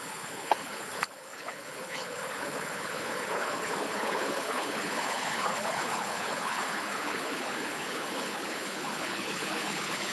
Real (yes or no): no